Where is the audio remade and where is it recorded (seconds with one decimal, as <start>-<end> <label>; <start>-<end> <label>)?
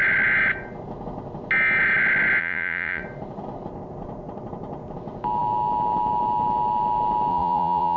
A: 0.0-2.4 recorded; 2.4-3.0 remade; 3.0-7.3 recorded; 7.3-8.0 remade